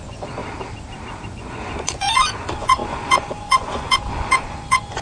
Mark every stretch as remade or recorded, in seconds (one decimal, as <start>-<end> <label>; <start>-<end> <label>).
0.0-0.4 remade; 0.4-1.3 recorded; 1.3-5.0 remade